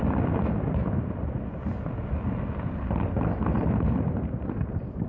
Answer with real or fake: real